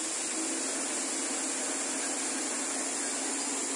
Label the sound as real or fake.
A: real